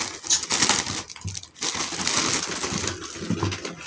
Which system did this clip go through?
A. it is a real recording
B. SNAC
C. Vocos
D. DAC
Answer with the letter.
A